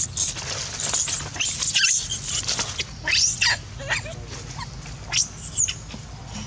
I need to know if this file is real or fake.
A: real